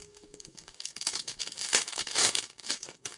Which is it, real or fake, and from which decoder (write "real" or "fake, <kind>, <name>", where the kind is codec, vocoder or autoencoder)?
fake, codec, DAC